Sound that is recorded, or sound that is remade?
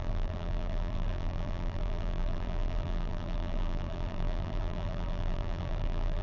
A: remade